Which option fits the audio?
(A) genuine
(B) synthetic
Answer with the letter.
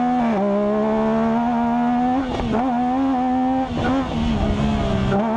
A